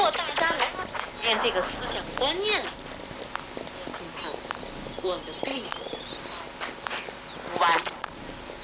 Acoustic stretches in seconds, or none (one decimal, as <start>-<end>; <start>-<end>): 0.0-5.5; 6.1-7.7; 8.2-8.6